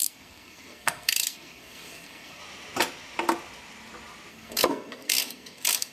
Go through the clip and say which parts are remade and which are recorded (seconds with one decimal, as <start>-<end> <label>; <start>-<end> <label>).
0.0-2.4 remade; 2.4-4.3 recorded; 4.3-5.9 remade